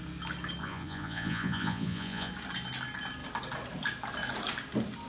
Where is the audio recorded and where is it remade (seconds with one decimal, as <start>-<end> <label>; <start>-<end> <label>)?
0.0-0.6 recorded; 0.6-2.3 remade; 2.3-5.1 recorded